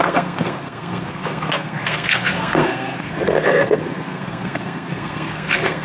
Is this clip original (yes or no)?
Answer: no